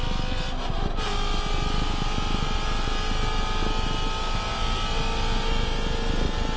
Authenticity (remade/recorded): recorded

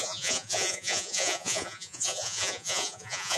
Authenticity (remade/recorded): remade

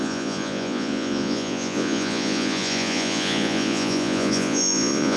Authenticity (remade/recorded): remade